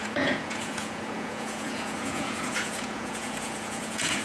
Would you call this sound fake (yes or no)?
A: yes